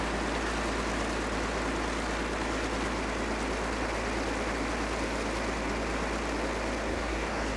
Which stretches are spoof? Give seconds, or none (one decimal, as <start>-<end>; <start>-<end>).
6.9-7.6